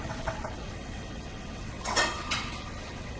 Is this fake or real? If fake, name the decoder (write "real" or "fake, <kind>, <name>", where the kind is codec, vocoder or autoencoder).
fake, vocoder, WaveNeXt